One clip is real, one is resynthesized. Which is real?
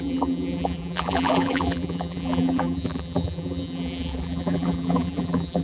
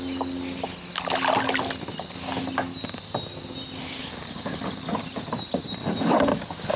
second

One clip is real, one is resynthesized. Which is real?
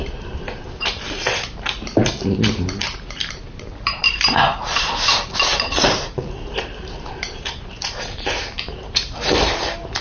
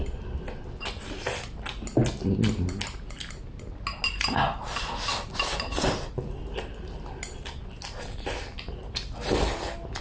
second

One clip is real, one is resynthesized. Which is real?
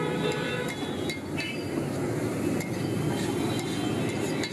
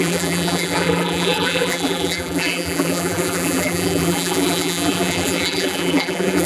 first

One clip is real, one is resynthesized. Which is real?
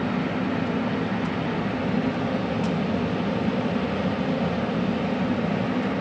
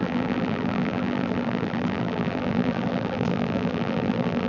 first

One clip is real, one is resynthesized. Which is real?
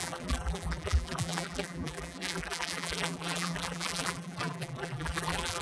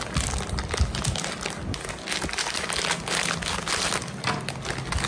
second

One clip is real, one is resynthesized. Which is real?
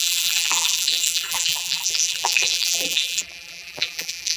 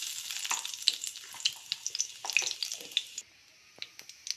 second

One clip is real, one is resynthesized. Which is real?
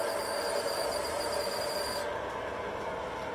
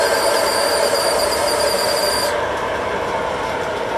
first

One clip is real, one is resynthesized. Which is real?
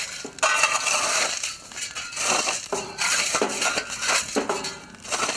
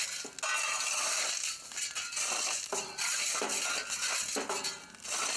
second